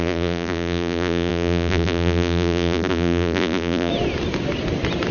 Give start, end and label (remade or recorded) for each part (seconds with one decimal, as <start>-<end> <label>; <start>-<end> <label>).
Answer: 0.0-3.9 remade; 3.9-5.1 recorded